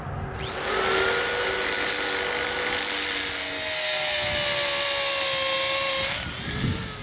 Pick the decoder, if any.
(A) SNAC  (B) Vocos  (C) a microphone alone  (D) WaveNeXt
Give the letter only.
C